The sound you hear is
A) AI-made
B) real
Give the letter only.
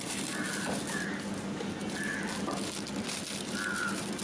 B